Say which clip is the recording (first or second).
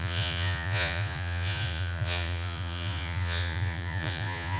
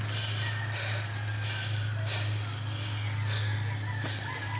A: second